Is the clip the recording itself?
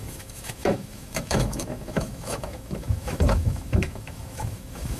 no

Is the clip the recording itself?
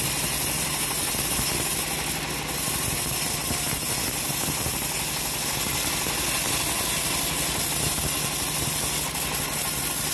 yes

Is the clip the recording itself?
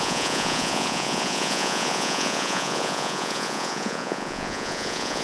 no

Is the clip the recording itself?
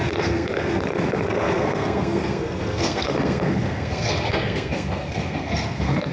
no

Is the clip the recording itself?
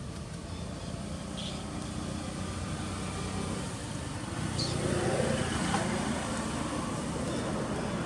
yes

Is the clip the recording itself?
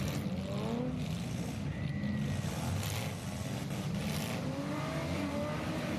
yes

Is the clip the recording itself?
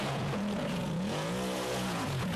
no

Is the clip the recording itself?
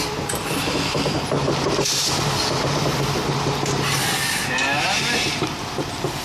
yes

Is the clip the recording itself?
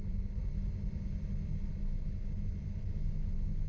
yes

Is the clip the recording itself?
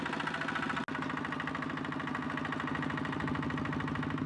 yes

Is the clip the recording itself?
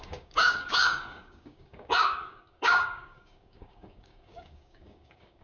no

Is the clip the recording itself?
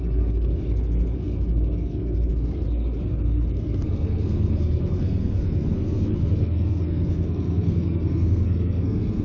no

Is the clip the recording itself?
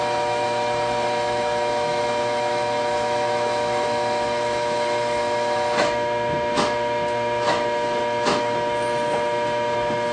no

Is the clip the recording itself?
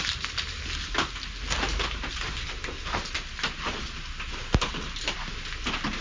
yes